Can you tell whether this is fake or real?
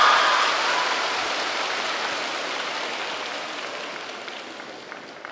real